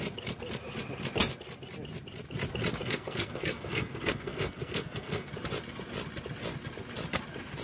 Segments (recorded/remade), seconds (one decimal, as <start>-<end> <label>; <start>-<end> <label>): 0.0-2.8 recorded; 2.8-5.3 remade; 5.3-7.6 recorded